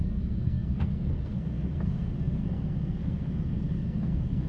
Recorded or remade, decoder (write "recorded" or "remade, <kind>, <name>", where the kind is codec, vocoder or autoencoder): remade, codec, SNAC